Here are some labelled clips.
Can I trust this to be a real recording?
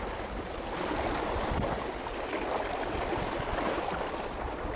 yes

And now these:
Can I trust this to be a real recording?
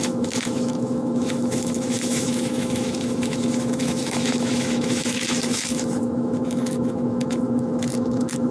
no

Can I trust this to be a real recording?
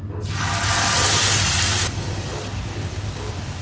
yes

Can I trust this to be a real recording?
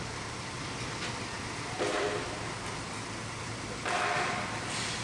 no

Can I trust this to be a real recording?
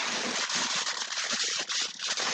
yes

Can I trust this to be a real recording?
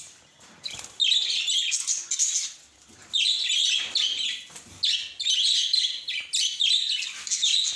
yes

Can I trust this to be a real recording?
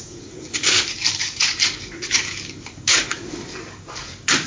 no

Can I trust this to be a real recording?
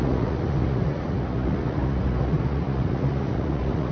no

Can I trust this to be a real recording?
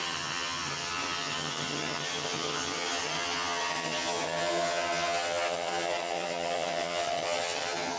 no